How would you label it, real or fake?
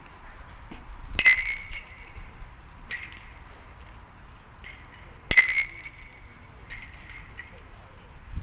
real